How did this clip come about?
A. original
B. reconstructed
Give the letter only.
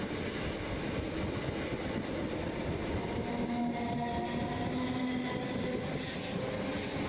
A